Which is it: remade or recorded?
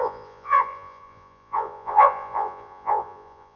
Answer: remade